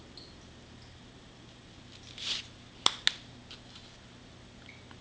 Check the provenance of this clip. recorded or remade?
recorded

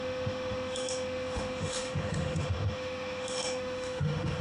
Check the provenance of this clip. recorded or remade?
remade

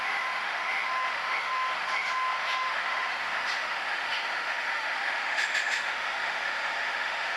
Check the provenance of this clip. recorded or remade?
remade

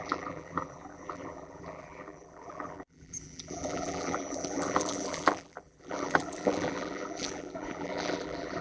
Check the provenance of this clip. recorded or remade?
remade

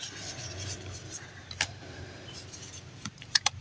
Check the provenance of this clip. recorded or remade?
remade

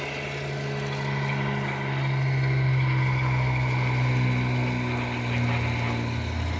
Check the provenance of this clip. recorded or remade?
recorded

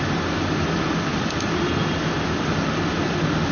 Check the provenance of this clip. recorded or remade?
recorded